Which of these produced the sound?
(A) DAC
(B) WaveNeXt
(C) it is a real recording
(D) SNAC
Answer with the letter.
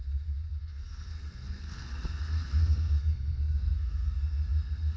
D